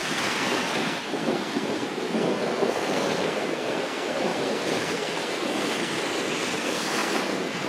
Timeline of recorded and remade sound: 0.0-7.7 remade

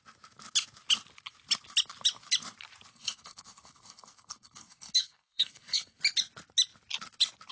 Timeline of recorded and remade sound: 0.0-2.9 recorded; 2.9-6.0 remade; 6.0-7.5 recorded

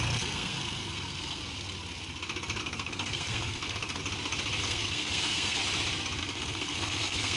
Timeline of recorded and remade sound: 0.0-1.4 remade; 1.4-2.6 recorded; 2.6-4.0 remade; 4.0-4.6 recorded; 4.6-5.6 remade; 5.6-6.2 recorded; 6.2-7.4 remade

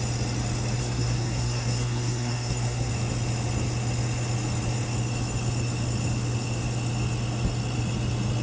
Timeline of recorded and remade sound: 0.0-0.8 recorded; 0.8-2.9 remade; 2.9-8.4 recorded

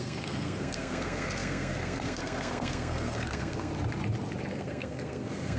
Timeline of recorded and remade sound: 0.0-3.7 remade; 3.7-4.5 recorded; 4.5-5.6 remade